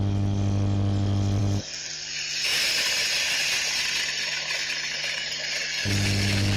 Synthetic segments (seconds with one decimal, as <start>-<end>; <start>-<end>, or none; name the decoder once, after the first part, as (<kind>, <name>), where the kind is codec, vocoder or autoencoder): none